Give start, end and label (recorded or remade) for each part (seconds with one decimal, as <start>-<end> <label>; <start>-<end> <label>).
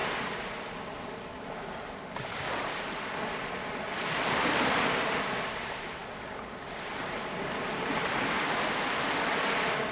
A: 0.0-9.9 recorded